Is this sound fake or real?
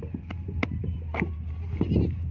fake